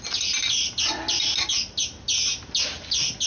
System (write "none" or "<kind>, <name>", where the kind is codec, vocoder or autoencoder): none